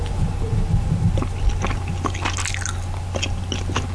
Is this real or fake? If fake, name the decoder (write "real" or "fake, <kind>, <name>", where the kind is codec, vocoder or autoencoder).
real